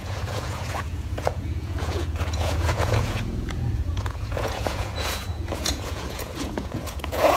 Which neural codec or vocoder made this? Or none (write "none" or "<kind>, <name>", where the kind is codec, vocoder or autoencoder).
vocoder, Vocos